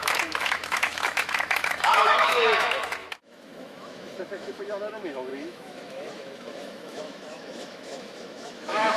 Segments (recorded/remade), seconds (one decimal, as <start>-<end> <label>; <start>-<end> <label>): 0.0-9.0 remade